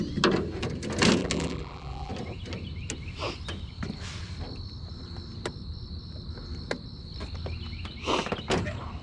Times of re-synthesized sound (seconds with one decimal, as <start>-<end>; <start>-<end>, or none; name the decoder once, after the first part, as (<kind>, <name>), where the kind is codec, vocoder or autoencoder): 1.2-2.1 (vocoder, BigVGAN v2)